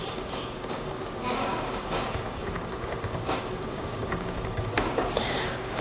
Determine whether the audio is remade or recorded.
remade